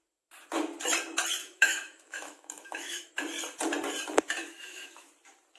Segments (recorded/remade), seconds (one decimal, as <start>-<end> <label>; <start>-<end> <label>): 0.0-1.4 recorded; 1.4-3.1 remade; 3.1-4.4 recorded; 4.4-5.1 remade; 5.1-5.6 recorded